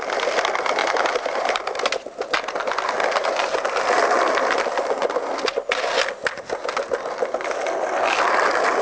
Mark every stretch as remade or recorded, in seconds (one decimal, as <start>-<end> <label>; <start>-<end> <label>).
0.0-0.8 recorded; 0.8-1.7 remade; 1.7-8.8 recorded